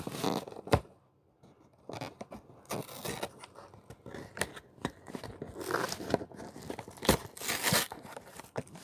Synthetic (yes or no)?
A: no